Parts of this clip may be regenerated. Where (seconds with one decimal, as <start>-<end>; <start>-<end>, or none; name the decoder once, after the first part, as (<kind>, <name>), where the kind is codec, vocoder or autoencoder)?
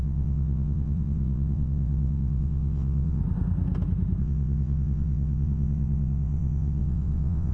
0.0-3.2 (vocoder, WaveNeXt); 4.2-7.5